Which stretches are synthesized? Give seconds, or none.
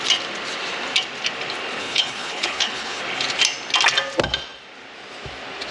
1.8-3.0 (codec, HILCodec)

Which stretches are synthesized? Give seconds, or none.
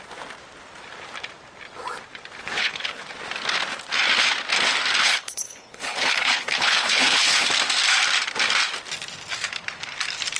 2.4-3.0 (codec, HILCodec); 5.0-7.5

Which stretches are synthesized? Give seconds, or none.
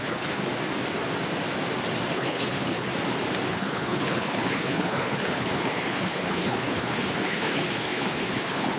0.0-0.4 (codec, HILCodec); 2.1-2.9; 3.5-8.8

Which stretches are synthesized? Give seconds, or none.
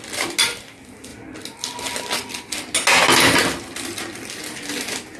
none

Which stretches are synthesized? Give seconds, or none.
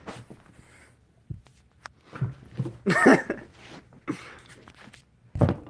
none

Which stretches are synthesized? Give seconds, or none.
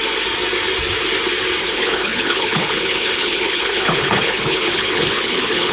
1.6-5.7 (codec, HILCodec)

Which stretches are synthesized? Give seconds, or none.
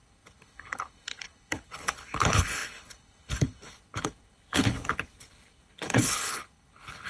0.0-7.1 (codec, HILCodec)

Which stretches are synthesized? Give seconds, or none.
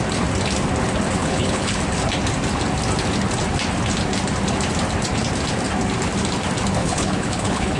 1.2-1.8 (codec, HILCodec); 6.8-7.8